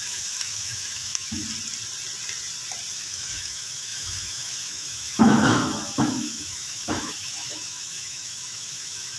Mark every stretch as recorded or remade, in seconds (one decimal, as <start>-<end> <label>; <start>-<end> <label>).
0.0-1.4 remade; 1.4-2.9 recorded; 2.9-9.2 remade